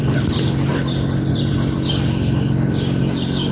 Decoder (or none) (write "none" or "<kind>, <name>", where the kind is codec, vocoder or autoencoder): vocoder, BigVGAN v2